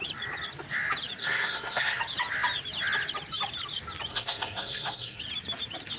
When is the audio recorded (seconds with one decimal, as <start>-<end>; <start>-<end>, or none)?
0.0-1.2; 2.0-4.1; 5.2-6.0